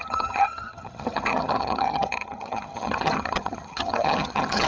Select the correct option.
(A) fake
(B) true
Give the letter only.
A